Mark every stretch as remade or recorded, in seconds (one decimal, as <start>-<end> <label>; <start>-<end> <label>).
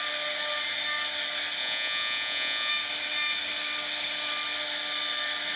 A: 0.0-1.6 recorded; 1.6-2.7 remade; 2.7-5.6 recorded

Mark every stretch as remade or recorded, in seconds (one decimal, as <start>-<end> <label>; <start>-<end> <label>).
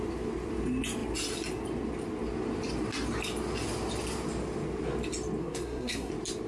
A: 0.0-5.4 recorded; 5.4-6.1 remade; 6.1-6.5 recorded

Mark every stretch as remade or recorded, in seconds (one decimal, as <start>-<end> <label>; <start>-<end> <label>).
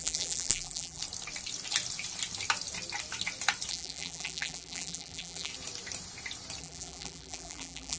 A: 0.0-1.0 remade; 1.0-3.7 recorded; 3.7-5.5 remade; 5.5-6.6 recorded; 6.6-8.0 remade